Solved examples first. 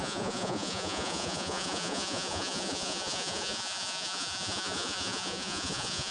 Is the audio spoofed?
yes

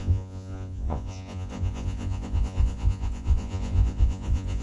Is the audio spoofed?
yes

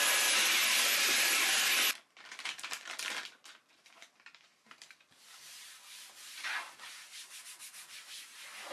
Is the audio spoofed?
no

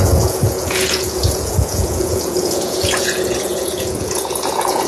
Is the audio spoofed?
yes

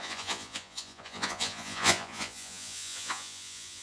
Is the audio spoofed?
yes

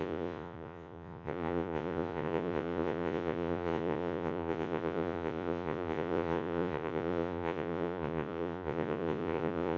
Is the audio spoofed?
yes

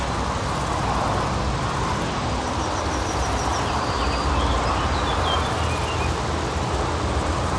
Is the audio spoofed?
no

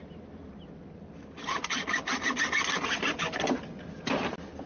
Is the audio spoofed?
no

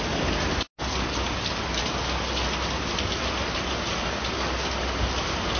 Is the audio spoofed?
no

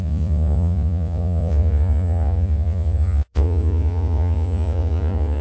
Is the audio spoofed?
yes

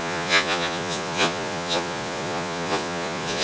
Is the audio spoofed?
yes